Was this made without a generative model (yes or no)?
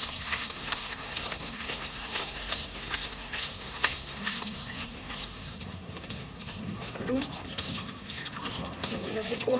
no